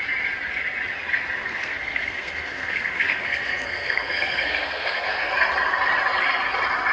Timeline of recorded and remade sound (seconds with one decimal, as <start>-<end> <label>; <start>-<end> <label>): 0.0-1.5 recorded; 1.5-5.3 remade; 5.3-6.9 recorded